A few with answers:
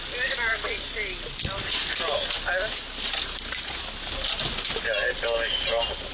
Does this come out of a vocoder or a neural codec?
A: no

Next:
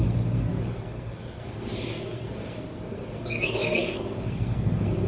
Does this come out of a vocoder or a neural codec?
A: yes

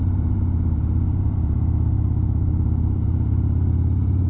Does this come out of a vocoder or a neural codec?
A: yes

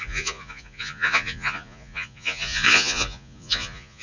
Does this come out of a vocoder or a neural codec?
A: yes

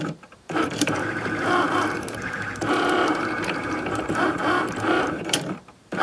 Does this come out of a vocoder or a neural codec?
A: yes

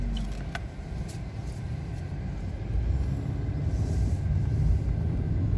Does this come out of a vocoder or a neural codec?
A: no